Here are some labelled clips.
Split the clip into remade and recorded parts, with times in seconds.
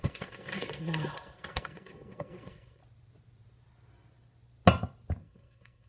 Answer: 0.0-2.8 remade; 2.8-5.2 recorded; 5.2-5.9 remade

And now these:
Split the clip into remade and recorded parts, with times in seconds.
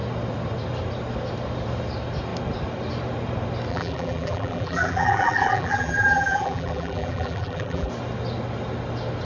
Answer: 0.0-3.7 recorded; 3.7-7.9 remade; 7.9-9.2 recorded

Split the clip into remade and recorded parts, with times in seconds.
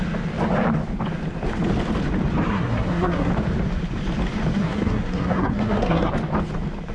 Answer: 0.0-2.5 recorded; 2.5-3.3 remade; 3.3-4.6 recorded; 4.6-6.1 remade; 6.1-6.9 recorded